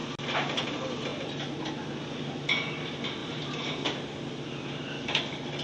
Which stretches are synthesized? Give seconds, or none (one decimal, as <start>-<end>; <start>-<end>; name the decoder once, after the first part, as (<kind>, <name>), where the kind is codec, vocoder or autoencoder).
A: 3.2-4.4 (vocoder, BigVGAN v2)